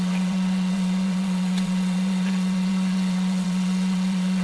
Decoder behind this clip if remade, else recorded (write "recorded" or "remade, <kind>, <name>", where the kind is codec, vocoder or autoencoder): remade, vocoder, WaveNeXt